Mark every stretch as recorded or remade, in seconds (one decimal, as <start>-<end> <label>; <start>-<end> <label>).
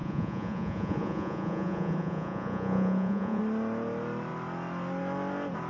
0.0-3.4 remade; 3.4-5.7 recorded